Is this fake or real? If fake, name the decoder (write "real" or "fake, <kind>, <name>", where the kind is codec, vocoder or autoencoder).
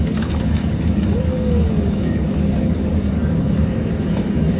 fake, codec, DAC